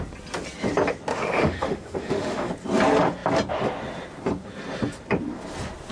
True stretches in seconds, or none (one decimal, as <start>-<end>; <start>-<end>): 0.0-1.1; 2.5-5.9